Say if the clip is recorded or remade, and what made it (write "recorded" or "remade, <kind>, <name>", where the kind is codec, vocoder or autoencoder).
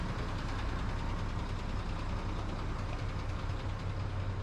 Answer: recorded